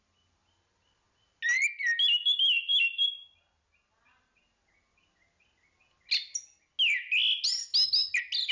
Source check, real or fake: real